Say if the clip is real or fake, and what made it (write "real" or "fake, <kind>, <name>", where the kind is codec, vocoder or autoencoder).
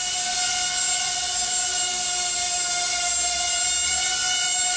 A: real